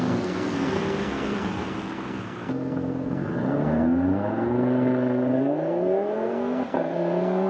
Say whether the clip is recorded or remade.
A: remade